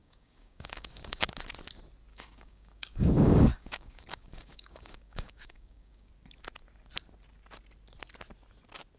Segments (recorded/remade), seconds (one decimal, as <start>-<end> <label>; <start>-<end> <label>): 0.0-1.3 remade; 1.3-2.1 recorded; 2.1-6.1 remade; 6.1-9.0 recorded